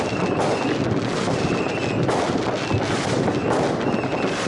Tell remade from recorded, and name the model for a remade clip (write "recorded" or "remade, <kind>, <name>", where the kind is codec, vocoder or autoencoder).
recorded